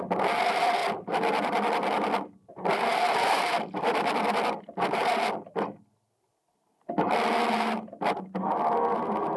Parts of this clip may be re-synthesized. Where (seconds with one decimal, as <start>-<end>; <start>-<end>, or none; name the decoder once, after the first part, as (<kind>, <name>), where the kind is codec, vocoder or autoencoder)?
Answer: none